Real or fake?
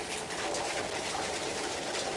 fake